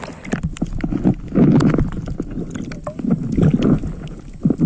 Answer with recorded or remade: recorded